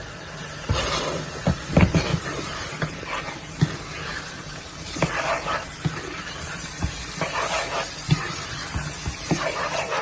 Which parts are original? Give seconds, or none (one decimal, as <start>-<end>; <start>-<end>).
0.0-2.1; 3.6-4.1; 5.7-10.0